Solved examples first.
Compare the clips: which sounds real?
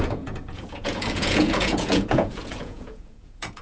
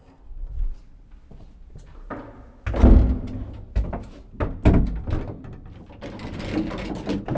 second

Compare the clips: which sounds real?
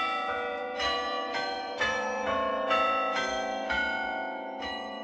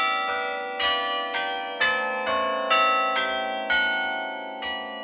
second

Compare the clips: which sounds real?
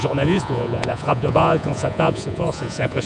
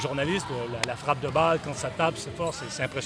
second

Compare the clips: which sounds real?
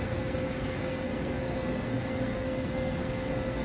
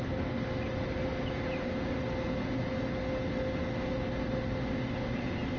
second